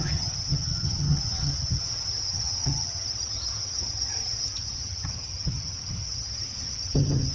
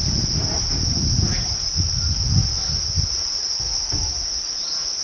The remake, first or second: first